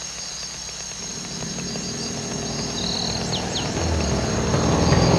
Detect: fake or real real